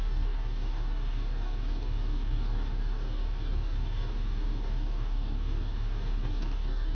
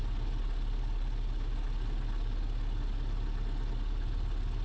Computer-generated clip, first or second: first